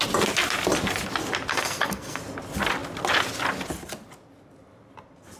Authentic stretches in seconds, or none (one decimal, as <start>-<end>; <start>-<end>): 0.0-1.5; 2.2-5.4